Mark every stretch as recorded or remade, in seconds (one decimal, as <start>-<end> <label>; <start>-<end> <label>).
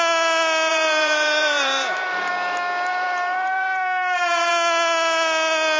0.0-0.7 recorded; 0.7-2.3 remade; 2.3-2.9 recorded; 2.9-4.5 remade; 4.5-5.8 recorded